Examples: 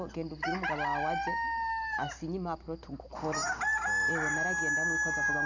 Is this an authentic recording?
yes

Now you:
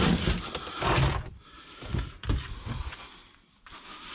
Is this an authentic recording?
yes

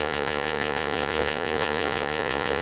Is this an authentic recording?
no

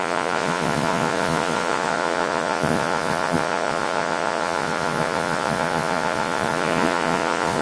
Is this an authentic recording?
no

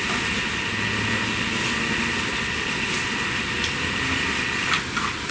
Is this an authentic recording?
yes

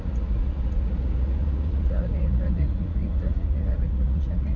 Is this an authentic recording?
no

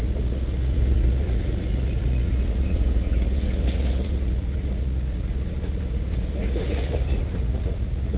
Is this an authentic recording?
no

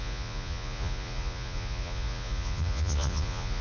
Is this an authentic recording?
no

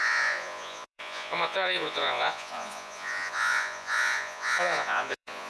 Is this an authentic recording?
no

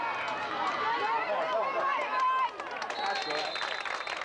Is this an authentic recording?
yes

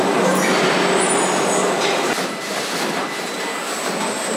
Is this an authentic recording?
yes